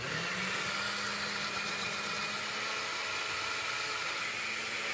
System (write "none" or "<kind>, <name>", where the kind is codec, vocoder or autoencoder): none